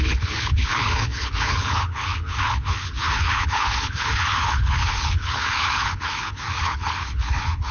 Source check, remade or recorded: remade